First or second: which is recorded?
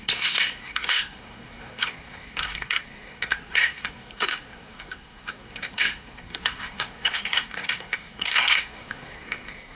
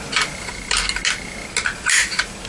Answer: second